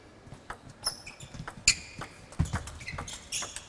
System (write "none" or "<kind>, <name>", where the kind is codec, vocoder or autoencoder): none